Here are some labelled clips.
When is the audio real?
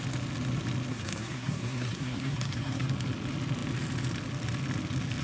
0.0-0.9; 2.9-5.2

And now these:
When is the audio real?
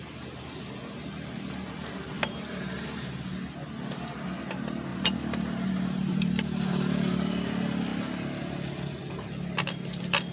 0.0-4.9; 6.8-10.3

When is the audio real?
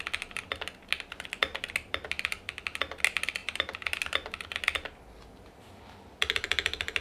0.0-3.4; 4.0-7.0